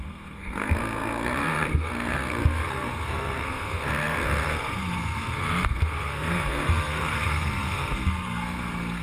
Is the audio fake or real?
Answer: fake